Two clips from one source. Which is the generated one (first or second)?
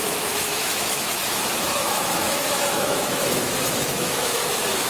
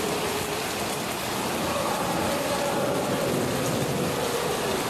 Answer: first